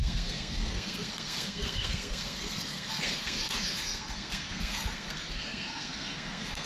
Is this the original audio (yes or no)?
no